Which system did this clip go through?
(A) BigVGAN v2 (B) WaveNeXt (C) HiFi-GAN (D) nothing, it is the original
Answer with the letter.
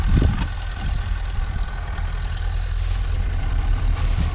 D